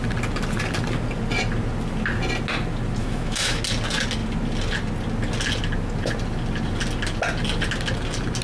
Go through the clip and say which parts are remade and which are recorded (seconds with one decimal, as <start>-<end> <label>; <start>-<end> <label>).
0.0-3.0 recorded; 3.0-3.6 remade; 3.6-8.4 recorded

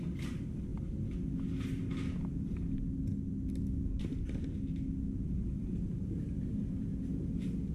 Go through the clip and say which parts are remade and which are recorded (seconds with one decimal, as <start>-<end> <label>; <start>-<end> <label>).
0.0-7.7 recorded

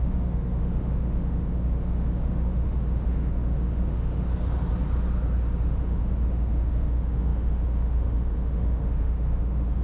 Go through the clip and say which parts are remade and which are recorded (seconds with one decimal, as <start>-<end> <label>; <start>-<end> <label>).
0.0-4.3 remade; 4.3-5.6 recorded; 5.6-9.8 remade

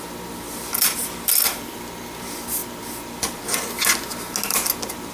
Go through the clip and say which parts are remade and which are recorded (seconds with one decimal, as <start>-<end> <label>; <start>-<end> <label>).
0.0-5.1 recorded

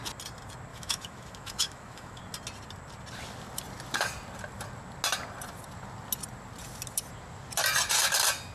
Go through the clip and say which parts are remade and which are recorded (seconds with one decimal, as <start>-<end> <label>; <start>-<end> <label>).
0.0-0.7 recorded; 0.7-2.2 remade; 2.2-8.5 recorded

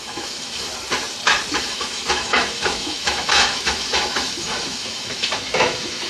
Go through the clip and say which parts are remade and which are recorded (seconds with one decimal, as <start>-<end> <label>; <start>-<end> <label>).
0.0-0.7 remade; 0.7-1.6 recorded; 1.6-6.1 remade